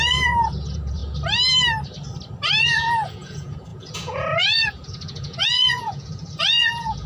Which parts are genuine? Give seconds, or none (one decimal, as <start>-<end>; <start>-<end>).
1.0-2.6